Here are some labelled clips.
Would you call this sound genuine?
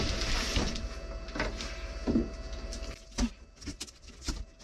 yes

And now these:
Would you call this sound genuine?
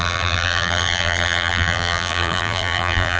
no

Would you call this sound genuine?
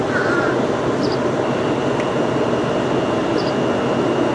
yes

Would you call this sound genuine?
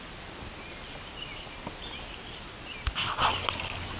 yes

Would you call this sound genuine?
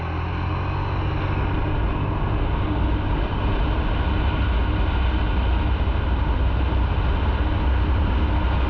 yes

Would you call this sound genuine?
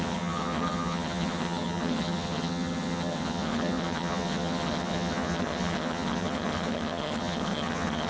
no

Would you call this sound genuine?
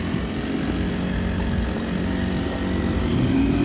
yes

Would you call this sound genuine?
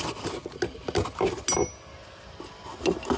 yes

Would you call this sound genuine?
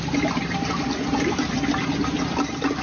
yes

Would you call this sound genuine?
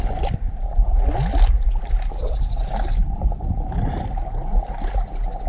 yes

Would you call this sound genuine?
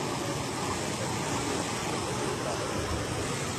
yes